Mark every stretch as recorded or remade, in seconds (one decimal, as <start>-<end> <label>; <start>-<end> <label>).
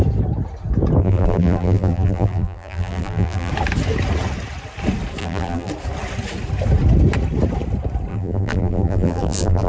0.0-1.0 recorded; 1.0-3.5 remade; 3.5-5.2 recorded; 5.2-5.7 remade; 5.7-8.1 recorded; 8.1-9.7 remade